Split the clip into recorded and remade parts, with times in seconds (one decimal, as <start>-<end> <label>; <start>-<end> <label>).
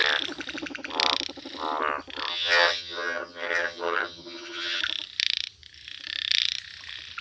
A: 0.0-2.3 recorded; 2.3-4.8 remade; 4.8-7.2 recorded